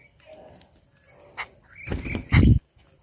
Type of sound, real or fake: real